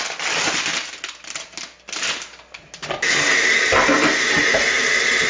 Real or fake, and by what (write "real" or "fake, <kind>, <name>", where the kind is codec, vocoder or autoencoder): real